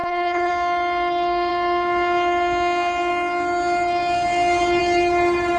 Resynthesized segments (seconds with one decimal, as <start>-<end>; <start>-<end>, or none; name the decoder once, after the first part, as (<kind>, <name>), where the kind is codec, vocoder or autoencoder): 0.0-0.5 (codec, HILCodec)